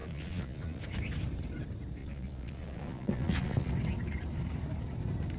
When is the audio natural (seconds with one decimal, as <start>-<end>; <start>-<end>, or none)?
0.8-2.0; 3.7-5.4